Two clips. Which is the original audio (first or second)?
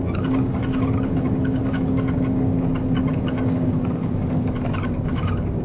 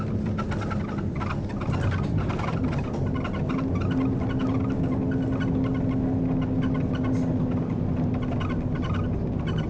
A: second